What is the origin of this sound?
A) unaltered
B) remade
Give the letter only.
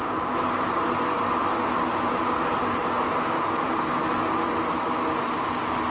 A